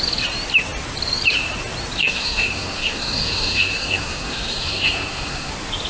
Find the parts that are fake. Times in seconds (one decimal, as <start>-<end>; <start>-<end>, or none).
2.0-5.5